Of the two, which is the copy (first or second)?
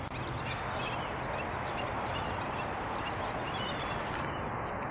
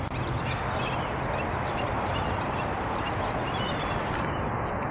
second